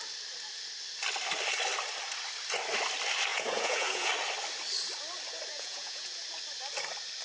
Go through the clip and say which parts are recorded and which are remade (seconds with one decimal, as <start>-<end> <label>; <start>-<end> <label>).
0.0-3.3 recorded; 3.3-4.1 remade; 4.1-5.5 recorded; 5.5-6.1 remade; 6.1-7.2 recorded